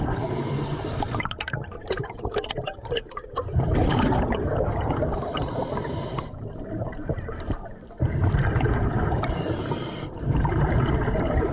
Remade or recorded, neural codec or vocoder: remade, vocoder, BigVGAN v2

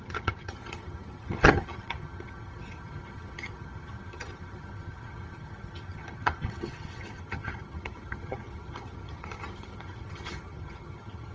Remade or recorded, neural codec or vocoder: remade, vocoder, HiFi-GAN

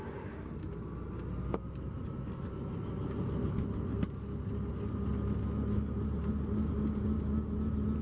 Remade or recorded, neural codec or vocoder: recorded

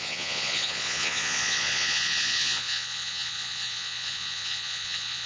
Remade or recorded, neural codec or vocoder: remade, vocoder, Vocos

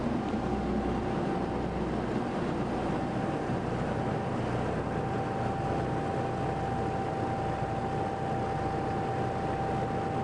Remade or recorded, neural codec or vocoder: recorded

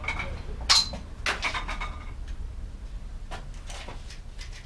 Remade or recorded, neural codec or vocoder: recorded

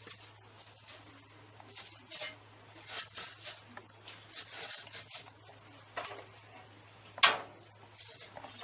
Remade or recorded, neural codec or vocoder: recorded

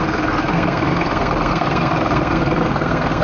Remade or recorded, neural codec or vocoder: remade, codec, SNAC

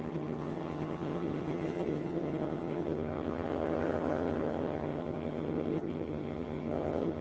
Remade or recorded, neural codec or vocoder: remade, vocoder, HiFi-GAN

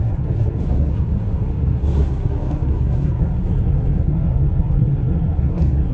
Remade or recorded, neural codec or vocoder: remade, codec, SNAC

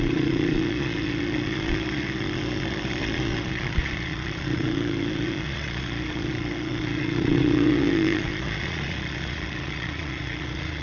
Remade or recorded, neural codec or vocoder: remade, vocoder, Vocos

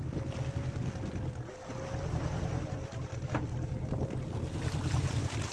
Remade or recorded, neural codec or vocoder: recorded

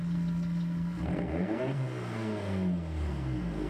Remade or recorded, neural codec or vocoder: remade, codec, SNAC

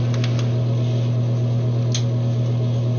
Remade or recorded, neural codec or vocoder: recorded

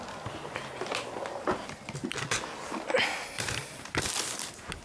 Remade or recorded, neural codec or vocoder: recorded